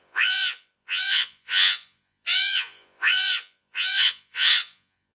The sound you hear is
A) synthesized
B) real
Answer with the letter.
A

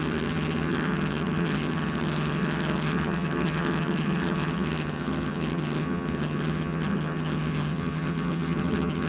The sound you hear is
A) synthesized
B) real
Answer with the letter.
A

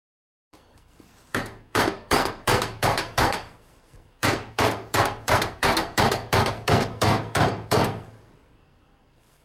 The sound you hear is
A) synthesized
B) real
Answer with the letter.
A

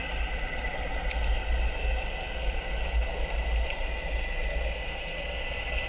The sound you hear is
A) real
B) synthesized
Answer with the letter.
A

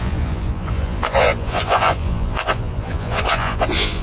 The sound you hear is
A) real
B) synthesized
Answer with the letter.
B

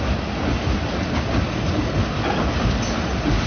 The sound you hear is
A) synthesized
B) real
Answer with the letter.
B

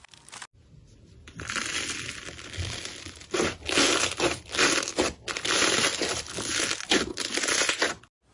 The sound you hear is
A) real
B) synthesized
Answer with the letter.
A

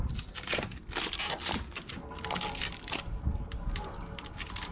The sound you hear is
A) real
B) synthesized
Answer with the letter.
A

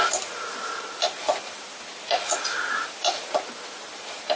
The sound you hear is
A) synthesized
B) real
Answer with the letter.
B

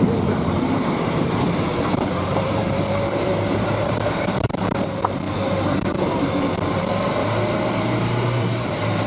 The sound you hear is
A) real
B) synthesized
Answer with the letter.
B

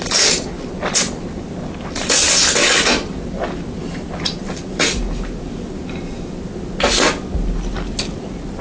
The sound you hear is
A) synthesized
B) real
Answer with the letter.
B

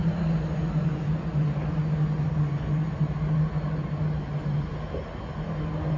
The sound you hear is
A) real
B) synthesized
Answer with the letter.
A